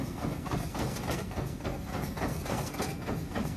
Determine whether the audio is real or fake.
fake